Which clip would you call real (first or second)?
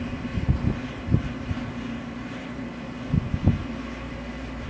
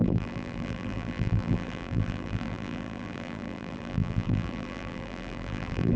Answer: first